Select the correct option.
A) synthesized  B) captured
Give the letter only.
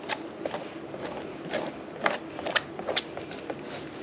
B